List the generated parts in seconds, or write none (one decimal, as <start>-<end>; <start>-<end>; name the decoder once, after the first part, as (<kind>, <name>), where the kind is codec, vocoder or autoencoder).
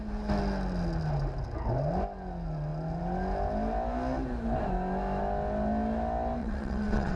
6.4-7.2 (vocoder, WaveNeXt)